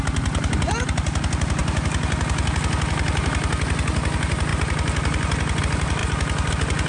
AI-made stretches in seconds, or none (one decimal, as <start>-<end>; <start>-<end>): none